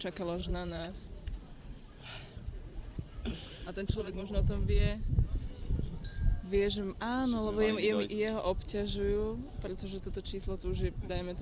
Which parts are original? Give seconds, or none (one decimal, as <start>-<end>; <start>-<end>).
0.0-0.4; 4.3-11.4